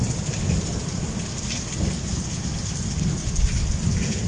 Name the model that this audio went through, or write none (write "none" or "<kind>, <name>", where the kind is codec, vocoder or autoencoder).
none